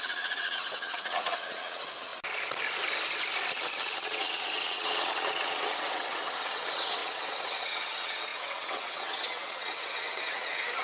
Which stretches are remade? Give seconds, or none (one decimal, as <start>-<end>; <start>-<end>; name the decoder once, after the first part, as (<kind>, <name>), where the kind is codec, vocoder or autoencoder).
0.0-2.1 (vocoder, WaveNeXt); 3.5-10.8

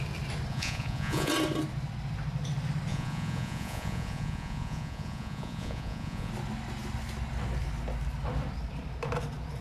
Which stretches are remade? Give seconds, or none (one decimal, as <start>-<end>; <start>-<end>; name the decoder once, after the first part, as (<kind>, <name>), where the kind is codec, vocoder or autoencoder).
0.5-1.3 (vocoder, Vocos); 2.9-6.3

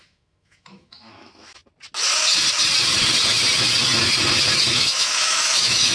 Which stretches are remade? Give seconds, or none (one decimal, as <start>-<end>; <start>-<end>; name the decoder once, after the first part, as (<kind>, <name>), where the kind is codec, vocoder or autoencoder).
0.0-1.6 (autoencoder, DAC-VAE); 4.7-5.9

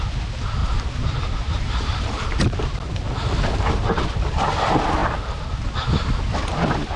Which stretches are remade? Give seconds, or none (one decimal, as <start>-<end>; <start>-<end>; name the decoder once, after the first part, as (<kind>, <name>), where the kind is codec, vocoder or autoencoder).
0.6-2.9 (vocoder, BigVGAN v2)

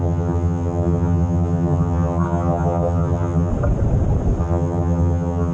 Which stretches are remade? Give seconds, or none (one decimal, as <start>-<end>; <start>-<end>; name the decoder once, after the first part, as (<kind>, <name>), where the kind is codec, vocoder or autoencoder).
0.0-3.5 (vocoder, HiFi-GAN); 4.4-5.5

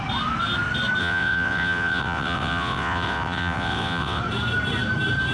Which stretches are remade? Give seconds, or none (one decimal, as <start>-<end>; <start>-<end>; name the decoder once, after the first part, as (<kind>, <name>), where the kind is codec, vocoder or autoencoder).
1.0-4.2 (vocoder, WaveNeXt)